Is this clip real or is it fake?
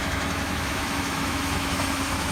fake